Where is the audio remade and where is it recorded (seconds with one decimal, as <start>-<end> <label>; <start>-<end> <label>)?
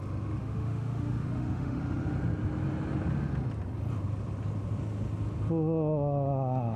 0.0-0.4 recorded; 0.4-1.8 remade; 1.8-6.8 recorded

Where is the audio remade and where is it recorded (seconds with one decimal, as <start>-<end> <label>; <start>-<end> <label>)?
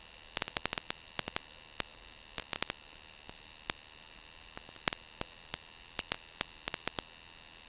0.0-7.7 recorded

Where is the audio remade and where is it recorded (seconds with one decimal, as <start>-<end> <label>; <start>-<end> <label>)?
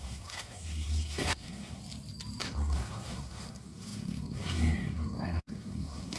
0.0-1.8 remade; 1.8-2.4 recorded; 2.4-6.2 remade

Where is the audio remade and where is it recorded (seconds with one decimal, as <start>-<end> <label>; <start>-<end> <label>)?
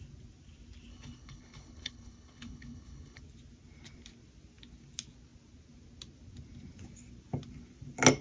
0.0-0.9 recorded; 0.9-3.2 remade; 3.2-8.2 recorded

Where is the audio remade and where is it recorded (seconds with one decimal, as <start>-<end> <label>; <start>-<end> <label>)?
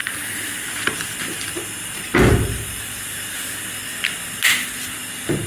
0.0-0.7 remade; 0.7-5.5 recorded